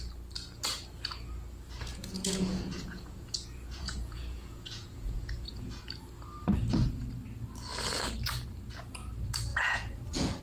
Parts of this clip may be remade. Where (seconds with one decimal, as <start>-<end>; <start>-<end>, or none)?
1.9-5.7; 9.5-10.4